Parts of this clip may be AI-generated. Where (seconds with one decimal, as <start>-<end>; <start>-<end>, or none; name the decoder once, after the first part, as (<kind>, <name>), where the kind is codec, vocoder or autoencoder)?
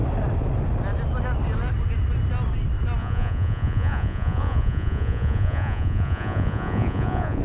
3.0-7.4 (vocoder, Vocos)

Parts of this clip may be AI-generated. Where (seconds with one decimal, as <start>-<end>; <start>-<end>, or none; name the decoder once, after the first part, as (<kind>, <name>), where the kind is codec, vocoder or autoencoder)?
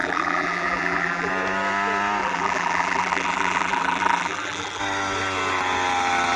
0.0-1.3 (vocoder, BigVGAN v2); 2.2-4.8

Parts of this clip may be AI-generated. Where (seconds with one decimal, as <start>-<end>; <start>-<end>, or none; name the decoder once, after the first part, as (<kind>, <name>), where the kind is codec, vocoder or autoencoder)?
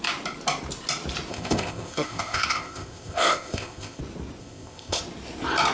1.3-4.0 (codec, ZipCodec); 4.4-5.0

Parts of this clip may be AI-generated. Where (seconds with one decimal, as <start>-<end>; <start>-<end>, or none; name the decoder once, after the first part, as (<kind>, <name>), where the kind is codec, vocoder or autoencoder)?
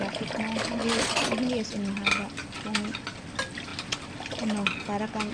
none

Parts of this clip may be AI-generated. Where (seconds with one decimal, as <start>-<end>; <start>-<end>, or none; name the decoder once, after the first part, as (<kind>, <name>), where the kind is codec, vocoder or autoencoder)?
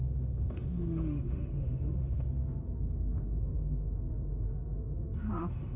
0.0-5.8 (autoencoder, DAC-VAE)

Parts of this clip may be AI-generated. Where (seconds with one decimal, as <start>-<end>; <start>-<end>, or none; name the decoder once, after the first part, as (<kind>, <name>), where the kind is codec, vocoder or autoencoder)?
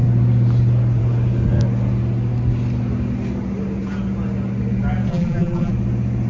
5.1-5.7 (vocoder, BigVGAN v2)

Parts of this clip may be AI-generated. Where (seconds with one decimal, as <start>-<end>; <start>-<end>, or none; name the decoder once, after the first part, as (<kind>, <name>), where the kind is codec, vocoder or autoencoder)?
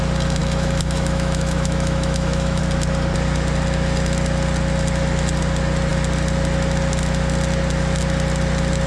0.4-2.6 (autoencoder, DAC-VAE)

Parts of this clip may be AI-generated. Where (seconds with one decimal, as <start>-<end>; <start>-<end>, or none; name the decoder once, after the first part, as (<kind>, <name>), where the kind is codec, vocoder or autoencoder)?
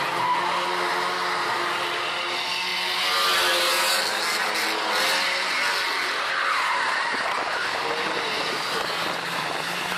none